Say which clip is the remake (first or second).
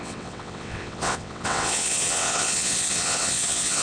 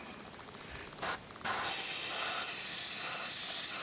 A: first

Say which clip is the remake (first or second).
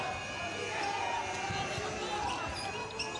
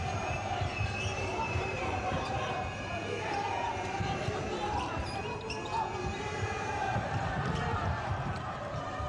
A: second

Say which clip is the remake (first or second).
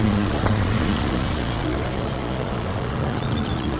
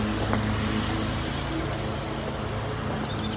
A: first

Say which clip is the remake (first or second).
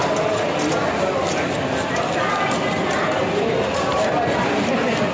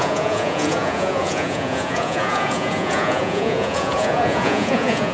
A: second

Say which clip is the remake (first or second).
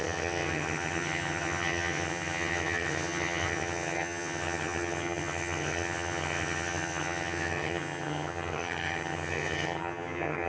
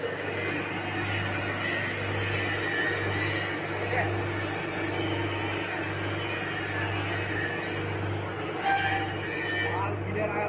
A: first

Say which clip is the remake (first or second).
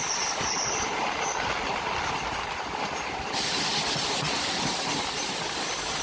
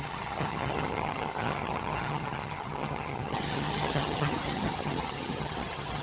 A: second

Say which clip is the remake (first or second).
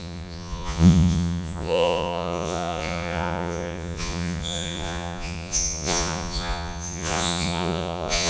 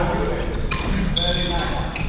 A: first